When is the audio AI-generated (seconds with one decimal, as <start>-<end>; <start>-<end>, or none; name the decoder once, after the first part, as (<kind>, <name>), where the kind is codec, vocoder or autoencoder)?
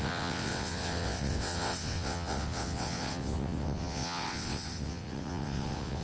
0.0-6.0 (vocoder, WaveNeXt)